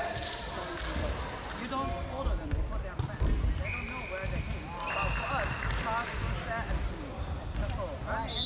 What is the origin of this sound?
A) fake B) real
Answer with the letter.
B